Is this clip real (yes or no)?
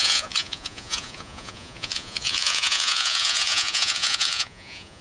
no